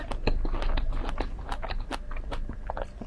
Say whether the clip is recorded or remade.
recorded